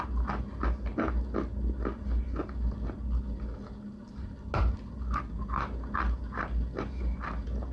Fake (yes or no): no